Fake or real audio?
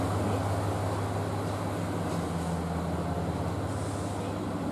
real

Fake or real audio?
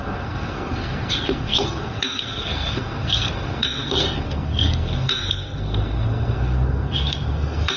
fake